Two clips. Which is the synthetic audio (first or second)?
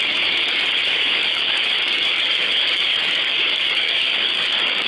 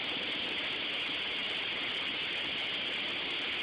first